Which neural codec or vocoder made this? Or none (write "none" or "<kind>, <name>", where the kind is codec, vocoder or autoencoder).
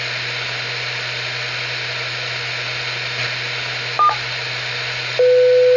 none